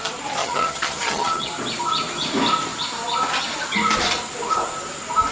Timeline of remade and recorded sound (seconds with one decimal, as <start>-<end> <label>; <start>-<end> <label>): 0.0-0.4 recorded; 0.4-1.5 remade; 1.5-5.3 recorded